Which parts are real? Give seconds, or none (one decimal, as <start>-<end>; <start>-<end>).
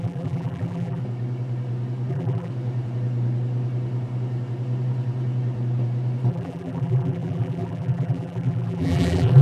1.0-2.1; 2.5-6.3